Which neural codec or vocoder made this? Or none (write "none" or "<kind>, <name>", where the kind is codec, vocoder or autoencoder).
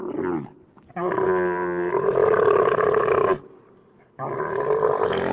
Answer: none